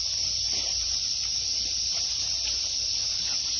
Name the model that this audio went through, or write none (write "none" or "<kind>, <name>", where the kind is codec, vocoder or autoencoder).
none